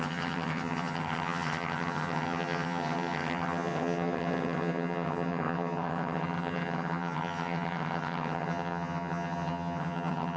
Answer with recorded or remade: remade